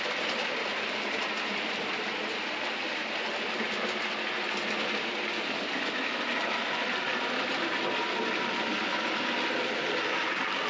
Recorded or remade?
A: recorded